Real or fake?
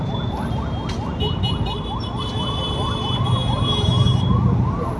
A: real